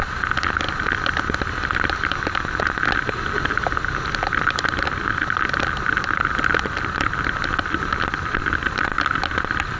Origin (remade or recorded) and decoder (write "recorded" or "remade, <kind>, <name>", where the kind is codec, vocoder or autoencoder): recorded